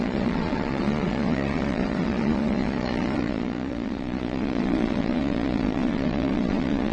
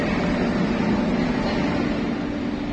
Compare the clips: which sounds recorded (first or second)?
second